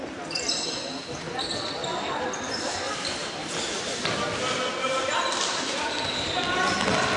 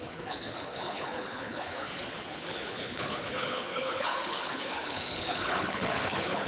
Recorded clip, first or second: first